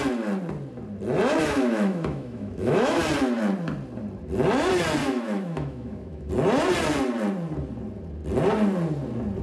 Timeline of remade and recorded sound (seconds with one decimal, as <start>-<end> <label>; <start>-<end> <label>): 0.0-1.4 recorded; 1.4-3.0 remade; 3.0-5.0 recorded; 5.0-6.3 remade; 6.3-9.4 recorded